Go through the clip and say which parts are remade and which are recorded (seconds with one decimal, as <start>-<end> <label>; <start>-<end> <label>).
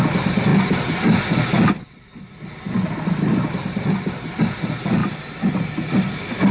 0.0-6.5 recorded